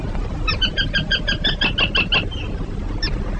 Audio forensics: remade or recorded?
recorded